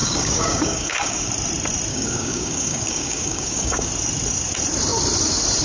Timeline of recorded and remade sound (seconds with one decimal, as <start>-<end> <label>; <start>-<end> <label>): 0.0-1.3 remade; 1.3-1.9 recorded; 1.9-3.9 remade; 3.9-5.6 recorded